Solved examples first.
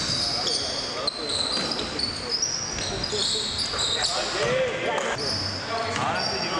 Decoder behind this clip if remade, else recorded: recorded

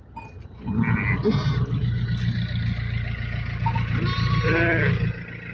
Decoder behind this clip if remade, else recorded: recorded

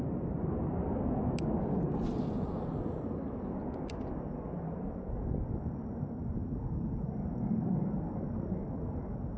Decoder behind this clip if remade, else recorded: recorded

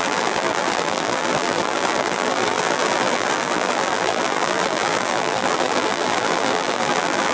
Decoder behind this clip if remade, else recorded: remade, vocoder, BigVGAN v2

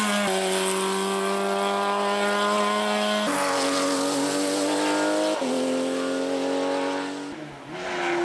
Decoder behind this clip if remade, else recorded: recorded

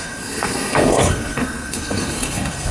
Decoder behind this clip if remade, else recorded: remade, codec, SNAC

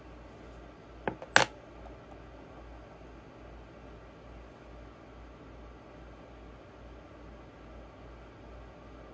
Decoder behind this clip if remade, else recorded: recorded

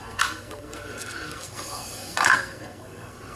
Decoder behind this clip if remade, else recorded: remade, codec, SNAC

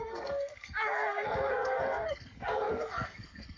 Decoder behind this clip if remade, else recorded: remade, codec, SNAC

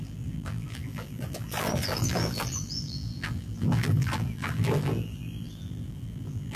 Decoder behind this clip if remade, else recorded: remade, vocoder, BigVGAN v2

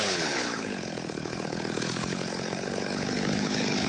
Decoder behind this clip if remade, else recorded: remade, codec, HILCodec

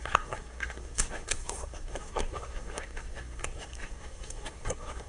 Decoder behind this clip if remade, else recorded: remade, codec, SNAC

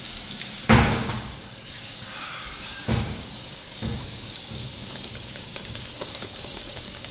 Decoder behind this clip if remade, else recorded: remade, codec, DAC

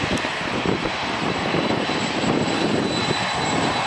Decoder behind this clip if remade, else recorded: remade, vocoder, BigVGAN v2